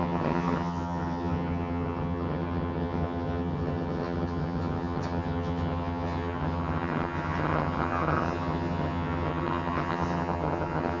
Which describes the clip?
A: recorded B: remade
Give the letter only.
B